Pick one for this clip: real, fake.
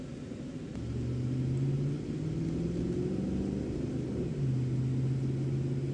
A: real